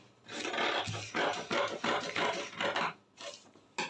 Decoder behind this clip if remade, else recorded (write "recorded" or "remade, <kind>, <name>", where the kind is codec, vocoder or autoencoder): recorded